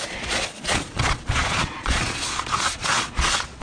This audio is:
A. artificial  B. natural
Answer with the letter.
A